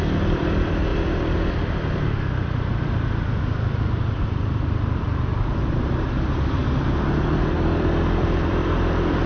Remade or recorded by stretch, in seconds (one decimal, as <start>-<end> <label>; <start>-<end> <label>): 0.0-6.6 remade; 6.6-7.4 recorded; 7.4-9.3 remade